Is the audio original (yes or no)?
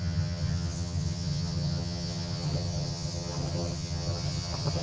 no